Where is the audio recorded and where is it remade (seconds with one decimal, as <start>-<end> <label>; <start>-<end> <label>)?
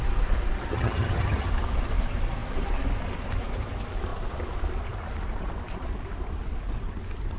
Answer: 0.0-0.7 recorded; 0.7-1.5 remade; 1.5-7.4 recorded